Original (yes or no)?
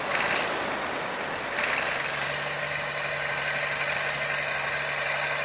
yes